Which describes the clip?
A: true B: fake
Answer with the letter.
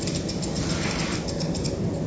B